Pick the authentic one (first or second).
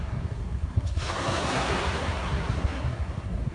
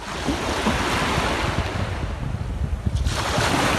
second